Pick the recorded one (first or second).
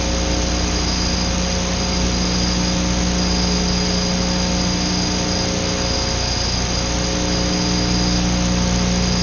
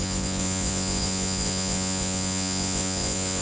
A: first